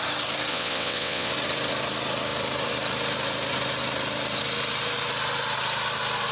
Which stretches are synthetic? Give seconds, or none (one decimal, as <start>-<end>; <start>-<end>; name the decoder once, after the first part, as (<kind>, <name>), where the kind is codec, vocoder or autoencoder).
0.5-1.3 (vocoder, WaveNeXt)